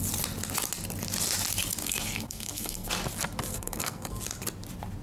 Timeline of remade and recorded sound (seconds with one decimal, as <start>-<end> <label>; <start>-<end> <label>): 0.0-1.8 recorded; 1.8-2.9 remade; 2.9-3.5 recorded; 3.5-4.2 remade; 4.2-5.0 recorded